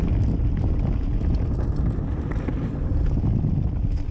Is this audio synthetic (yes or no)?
no